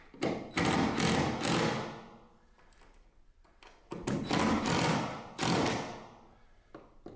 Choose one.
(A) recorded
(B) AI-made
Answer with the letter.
A